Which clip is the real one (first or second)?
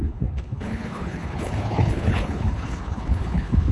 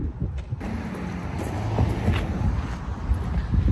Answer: second